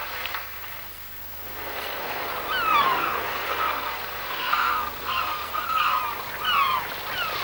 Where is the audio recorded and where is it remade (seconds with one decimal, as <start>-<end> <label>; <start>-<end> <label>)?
0.0-2.3 remade; 2.3-2.8 recorded; 2.8-6.0 remade; 6.0-7.4 recorded